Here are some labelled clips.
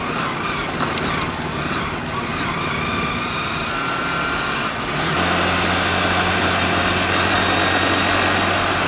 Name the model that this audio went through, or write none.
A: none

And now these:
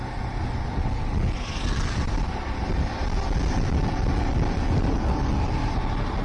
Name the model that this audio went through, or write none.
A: none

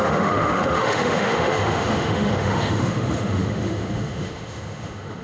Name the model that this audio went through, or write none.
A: autoencoder, DAC-VAE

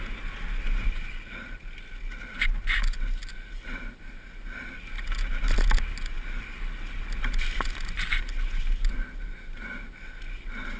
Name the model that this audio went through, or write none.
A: none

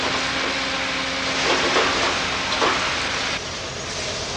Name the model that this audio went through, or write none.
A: none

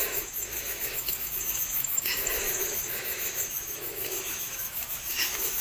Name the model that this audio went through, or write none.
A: autoencoder, DAC-VAE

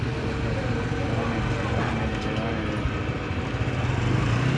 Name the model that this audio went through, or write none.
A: none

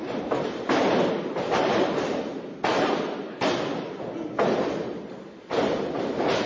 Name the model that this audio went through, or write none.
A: none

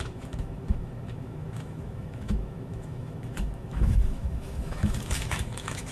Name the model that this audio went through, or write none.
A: autoencoder, DAC-VAE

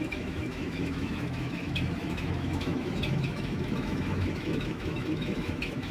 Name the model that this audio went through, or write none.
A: autoencoder, DAC-VAE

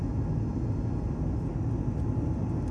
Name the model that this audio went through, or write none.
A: none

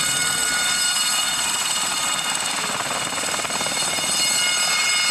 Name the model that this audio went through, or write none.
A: none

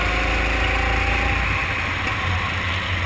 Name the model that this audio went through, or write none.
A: none